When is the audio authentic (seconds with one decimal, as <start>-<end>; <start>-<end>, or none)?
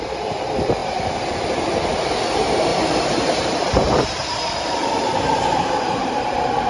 0.0-0.8; 1.4-2.7